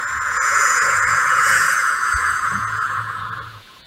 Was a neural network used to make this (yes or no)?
yes